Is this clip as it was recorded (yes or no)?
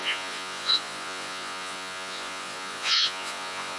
no